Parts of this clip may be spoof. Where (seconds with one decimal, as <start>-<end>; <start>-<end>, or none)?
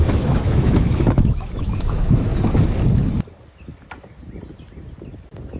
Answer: 0.0-2.3